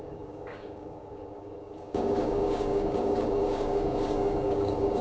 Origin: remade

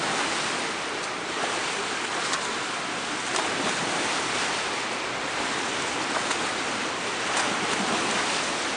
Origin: recorded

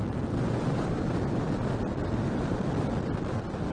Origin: recorded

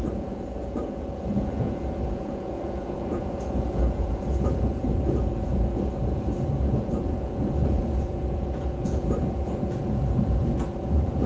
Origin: remade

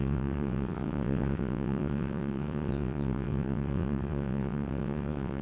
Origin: remade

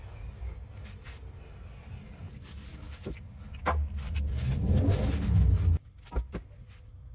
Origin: recorded